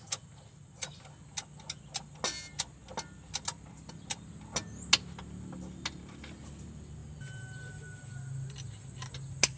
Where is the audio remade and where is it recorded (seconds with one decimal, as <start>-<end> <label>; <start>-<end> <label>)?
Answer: 0.0-9.6 recorded